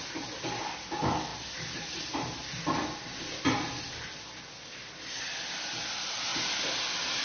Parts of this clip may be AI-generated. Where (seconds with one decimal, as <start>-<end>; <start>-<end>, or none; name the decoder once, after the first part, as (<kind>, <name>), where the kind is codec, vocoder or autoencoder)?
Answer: none